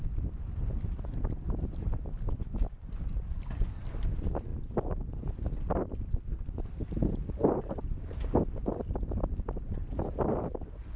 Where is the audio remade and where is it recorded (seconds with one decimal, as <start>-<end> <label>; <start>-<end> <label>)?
0.0-11.0 recorded